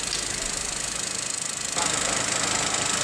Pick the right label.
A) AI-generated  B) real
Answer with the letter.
B